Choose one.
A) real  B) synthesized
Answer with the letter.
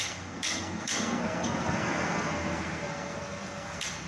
B